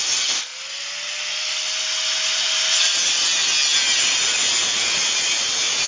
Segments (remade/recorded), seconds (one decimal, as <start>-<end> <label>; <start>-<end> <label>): 0.0-5.9 recorded